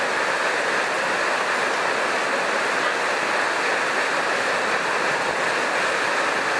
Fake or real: real